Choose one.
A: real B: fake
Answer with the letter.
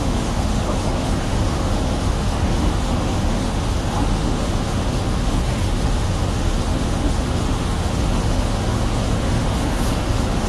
B